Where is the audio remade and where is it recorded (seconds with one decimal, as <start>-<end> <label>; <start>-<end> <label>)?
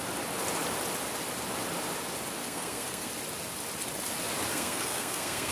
0.0-2.4 recorded; 2.4-3.1 remade; 3.1-4.5 recorded; 4.5-5.5 remade